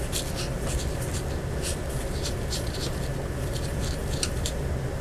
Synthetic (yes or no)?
no